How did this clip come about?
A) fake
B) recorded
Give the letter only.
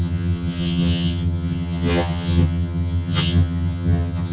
A